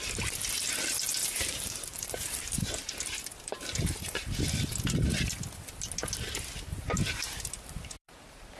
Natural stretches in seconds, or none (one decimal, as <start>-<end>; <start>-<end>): 0.0-1.2; 4.3-6.7